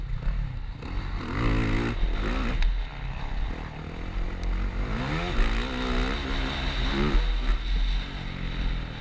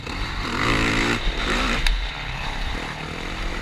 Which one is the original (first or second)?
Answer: first